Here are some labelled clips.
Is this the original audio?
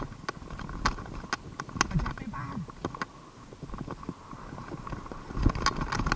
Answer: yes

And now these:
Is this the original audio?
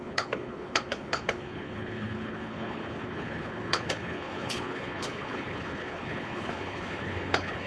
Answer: no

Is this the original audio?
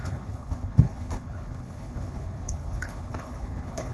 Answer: no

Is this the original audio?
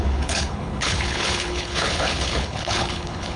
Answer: no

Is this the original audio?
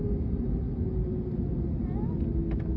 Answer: yes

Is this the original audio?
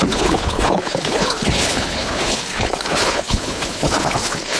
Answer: no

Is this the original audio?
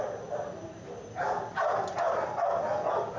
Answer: yes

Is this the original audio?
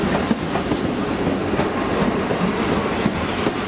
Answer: yes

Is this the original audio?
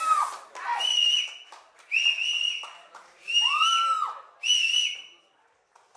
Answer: yes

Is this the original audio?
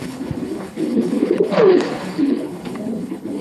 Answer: no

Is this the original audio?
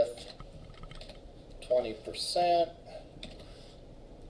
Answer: yes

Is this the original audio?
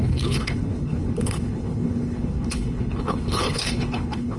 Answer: no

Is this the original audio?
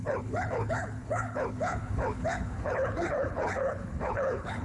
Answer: no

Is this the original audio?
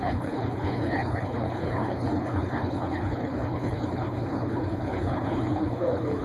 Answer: no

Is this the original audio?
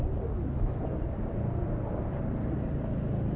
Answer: yes